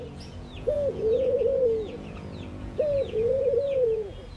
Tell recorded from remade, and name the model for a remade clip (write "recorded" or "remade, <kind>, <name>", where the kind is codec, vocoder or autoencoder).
remade, vocoder, Vocos